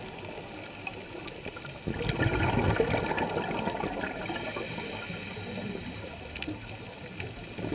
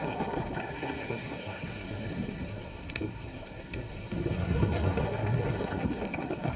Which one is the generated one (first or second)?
second